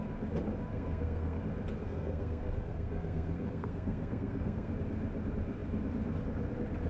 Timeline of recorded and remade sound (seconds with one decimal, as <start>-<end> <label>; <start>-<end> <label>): 0.0-0.7 recorded; 0.7-1.4 remade; 1.4-1.8 recorded; 1.8-4.7 remade; 4.7-6.9 recorded